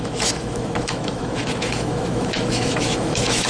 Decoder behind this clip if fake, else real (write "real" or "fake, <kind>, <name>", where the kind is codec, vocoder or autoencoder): fake, autoencoder, DAC-VAE